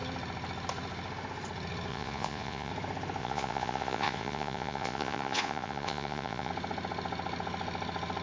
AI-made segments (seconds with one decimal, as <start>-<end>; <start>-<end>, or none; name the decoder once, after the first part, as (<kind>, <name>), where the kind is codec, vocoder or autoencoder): 1.9-2.7 (vocoder, Vocos); 3.2-6.5